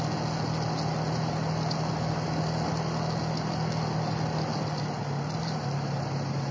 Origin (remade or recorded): recorded